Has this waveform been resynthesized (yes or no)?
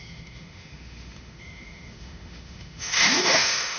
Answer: yes